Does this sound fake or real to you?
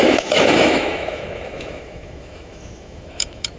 fake